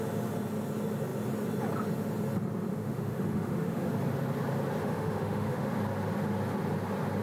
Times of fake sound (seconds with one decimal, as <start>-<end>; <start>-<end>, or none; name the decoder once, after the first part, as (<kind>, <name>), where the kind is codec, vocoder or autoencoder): 2.7-3.9 (autoencoder, DAC-VAE); 4.8-5.7